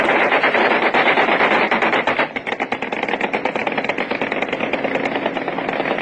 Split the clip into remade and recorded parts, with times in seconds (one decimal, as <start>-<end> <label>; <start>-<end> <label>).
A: 0.0-6.0 recorded